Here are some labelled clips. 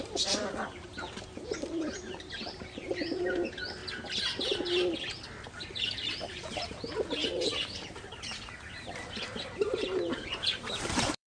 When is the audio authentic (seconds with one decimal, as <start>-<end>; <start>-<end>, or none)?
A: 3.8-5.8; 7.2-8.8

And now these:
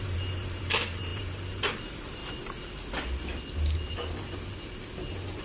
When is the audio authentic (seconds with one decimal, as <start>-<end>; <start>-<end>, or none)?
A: 2.2-5.4

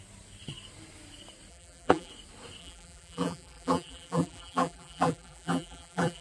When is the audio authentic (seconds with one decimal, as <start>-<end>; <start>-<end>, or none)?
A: 0.0-1.5; 2.1-2.6